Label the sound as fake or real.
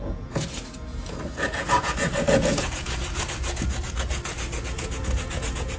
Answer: fake